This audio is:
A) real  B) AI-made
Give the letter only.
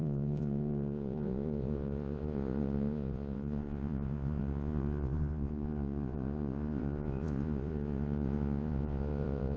B